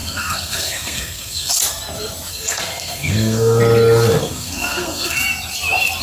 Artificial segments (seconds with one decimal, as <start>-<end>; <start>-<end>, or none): 0.0-1.5; 2.3-3.6; 4.2-5.2